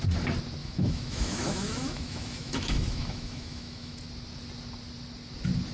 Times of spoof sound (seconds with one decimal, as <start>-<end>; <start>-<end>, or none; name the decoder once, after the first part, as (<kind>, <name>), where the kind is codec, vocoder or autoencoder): 0.6-4.0 (autoencoder, DAC-VAE)